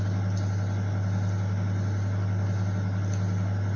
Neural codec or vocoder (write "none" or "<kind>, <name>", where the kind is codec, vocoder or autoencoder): none